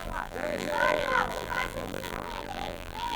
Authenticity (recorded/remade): remade